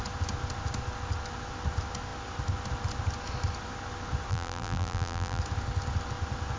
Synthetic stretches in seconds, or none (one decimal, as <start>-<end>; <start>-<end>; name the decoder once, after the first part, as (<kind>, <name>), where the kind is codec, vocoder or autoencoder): 4.3-5.4 (vocoder, BigVGAN v2)